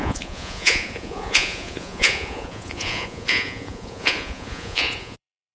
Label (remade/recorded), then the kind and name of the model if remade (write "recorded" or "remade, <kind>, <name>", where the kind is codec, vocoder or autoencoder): remade, vocoder, Vocos